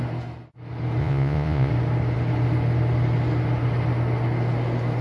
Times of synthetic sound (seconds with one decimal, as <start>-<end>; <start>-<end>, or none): 1.0-1.7